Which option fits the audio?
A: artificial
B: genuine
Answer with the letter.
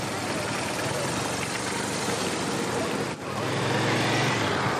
B